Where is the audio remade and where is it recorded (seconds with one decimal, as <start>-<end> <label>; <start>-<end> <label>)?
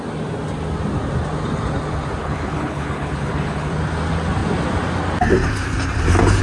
0.0-2.2 recorded; 2.2-3.7 remade; 3.7-6.4 recorded